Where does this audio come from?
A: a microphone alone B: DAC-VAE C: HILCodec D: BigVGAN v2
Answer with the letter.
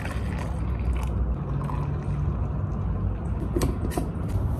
A